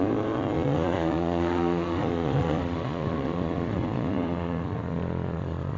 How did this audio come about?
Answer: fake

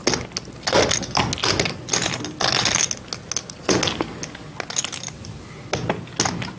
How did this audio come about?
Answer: real